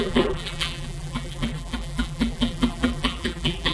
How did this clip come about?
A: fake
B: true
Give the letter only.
A